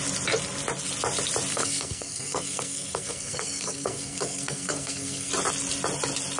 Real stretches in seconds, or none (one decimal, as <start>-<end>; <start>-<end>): 0.0-1.5; 5.3-6.4